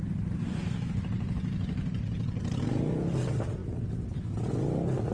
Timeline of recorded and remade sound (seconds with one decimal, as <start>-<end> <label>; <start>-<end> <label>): 0.0-5.1 recorded